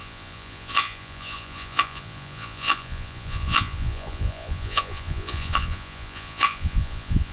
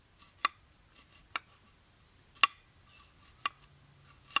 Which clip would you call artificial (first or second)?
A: first